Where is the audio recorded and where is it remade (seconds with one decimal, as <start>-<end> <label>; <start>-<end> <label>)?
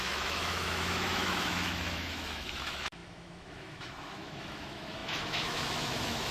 0.0-6.3 remade